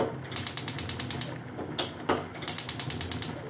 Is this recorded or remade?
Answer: recorded